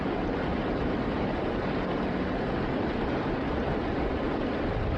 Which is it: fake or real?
real